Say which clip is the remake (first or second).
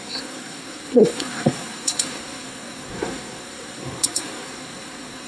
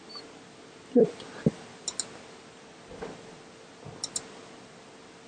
first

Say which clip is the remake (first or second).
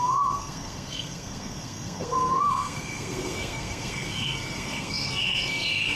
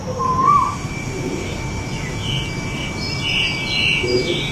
first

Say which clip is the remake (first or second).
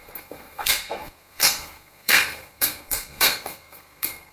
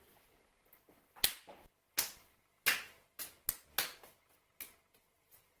first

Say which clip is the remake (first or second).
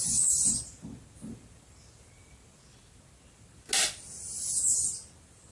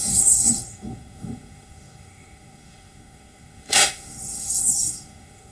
second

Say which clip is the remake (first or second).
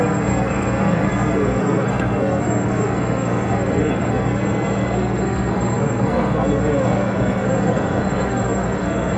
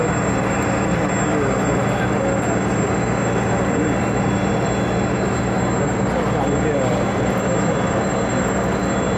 first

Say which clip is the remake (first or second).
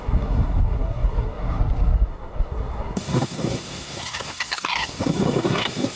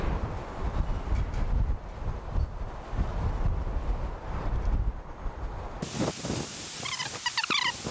first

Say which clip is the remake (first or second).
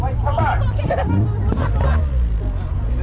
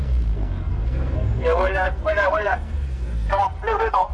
second